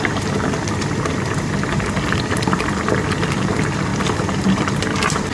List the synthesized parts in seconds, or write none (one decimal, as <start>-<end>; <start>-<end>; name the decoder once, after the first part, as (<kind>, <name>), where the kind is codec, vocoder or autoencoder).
none